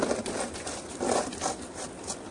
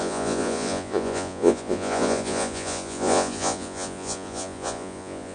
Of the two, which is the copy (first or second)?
second